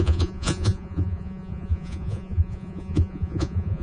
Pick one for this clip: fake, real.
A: fake